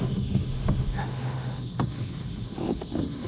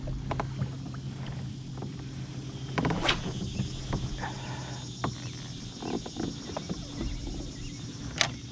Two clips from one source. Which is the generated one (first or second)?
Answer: first